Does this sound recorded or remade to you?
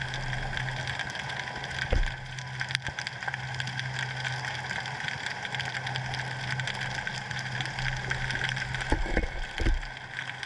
recorded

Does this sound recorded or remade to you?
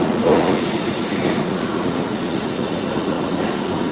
remade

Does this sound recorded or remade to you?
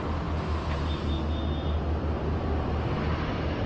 recorded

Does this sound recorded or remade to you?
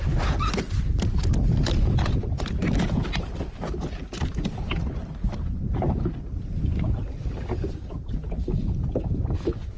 recorded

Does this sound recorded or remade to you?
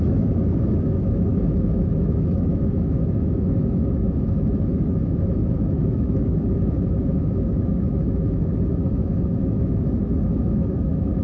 remade